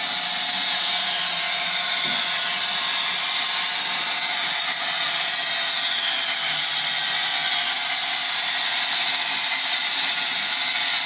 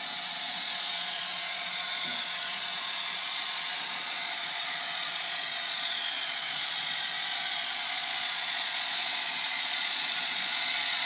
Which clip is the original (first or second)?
first